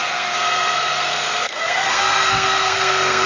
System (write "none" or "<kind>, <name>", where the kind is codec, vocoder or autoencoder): codec, SNAC